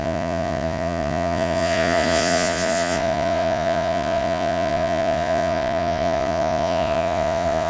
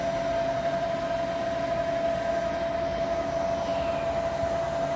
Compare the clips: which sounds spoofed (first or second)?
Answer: first